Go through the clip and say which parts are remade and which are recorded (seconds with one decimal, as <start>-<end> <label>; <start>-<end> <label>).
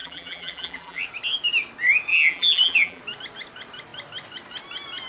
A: 0.0-1.0 remade; 1.0-2.1 recorded; 2.1-3.0 remade; 3.0-5.1 recorded